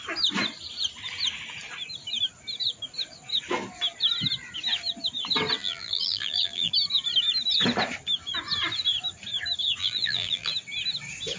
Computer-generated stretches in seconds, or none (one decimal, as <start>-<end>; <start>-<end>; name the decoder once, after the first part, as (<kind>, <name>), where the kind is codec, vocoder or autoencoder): 5.6-6.7 (vocoder, BigVGAN v2); 9.8-10.5